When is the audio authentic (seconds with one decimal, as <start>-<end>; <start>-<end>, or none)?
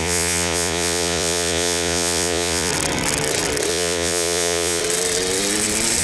2.7-3.7; 4.8-6.0